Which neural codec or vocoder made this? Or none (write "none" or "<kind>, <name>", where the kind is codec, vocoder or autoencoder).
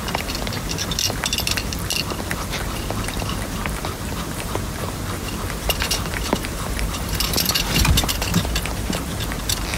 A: vocoder, BigVGAN v2